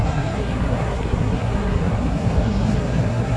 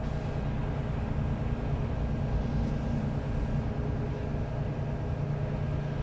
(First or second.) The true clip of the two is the second